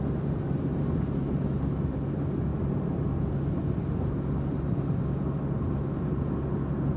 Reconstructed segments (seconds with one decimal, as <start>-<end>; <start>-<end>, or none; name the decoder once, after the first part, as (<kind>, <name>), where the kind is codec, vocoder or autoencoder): none

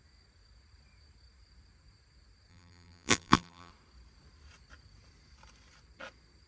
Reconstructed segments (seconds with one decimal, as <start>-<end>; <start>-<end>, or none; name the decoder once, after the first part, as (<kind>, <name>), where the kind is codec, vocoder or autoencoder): 2.5-3.7 (vocoder, BigVGAN v2)